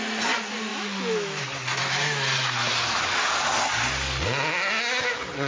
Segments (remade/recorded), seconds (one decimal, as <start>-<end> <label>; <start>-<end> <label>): 0.0-0.7 recorded; 0.7-1.4 remade; 1.4-5.5 recorded